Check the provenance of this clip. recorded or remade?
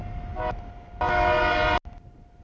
recorded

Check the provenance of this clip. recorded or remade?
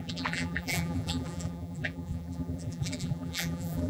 remade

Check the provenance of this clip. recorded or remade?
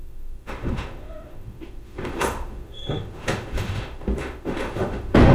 remade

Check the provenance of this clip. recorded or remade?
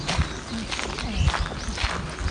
recorded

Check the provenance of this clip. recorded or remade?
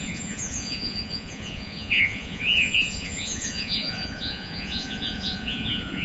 remade